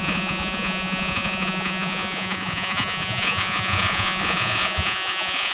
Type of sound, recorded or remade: remade